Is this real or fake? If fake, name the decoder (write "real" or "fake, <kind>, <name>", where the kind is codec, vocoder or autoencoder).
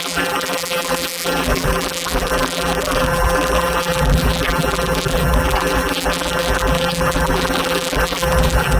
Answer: fake, vocoder, BigVGAN v2